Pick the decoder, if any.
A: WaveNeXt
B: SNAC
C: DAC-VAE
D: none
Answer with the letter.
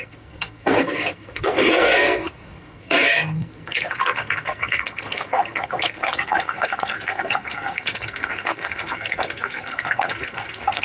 B